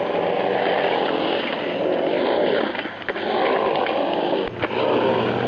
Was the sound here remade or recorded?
recorded